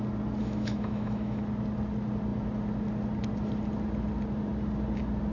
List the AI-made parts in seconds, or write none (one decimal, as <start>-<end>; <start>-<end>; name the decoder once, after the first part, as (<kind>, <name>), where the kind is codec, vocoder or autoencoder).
0.4-1.4 (autoencoder, DAC-VAE)